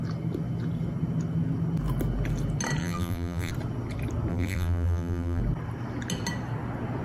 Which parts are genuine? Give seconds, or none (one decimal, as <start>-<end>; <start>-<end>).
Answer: 0.0-2.8; 3.5-4.3; 5.4-7.0